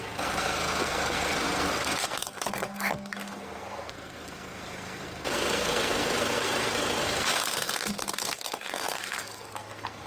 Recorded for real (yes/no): no